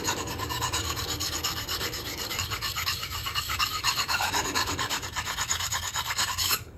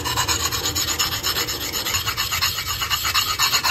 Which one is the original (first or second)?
second